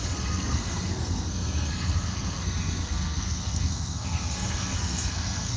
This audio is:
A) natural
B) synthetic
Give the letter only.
B